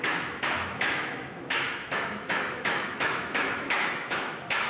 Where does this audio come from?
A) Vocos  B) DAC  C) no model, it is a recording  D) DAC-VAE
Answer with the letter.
D